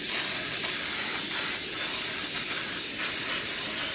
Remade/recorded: recorded